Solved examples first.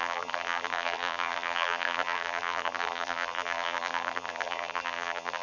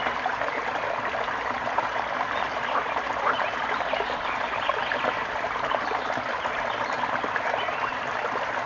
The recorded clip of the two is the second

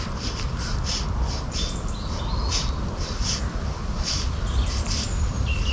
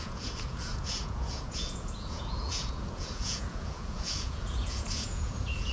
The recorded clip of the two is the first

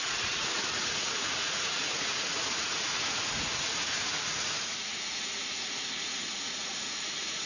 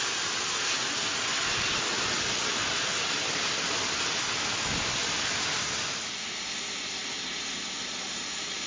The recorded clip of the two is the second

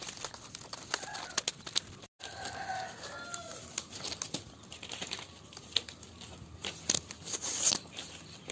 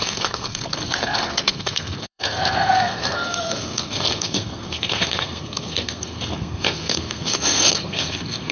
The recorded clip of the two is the first